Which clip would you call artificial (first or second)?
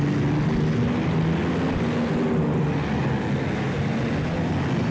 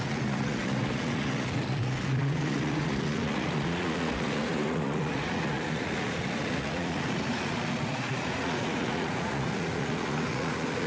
second